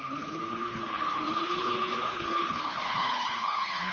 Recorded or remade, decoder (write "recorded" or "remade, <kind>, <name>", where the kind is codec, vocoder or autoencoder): remade, codec, HILCodec